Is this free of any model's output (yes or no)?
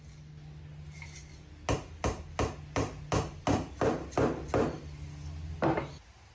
yes